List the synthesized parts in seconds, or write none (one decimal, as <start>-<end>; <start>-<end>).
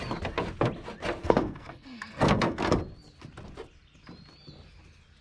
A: 1.2-2.6